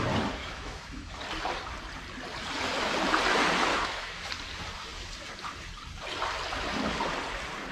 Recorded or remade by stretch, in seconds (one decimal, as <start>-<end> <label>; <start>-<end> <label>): 0.0-0.4 recorded; 0.4-1.2 remade; 1.2-3.7 recorded; 3.7-4.3 remade; 4.3-7.7 recorded